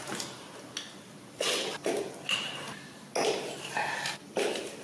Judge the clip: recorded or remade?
recorded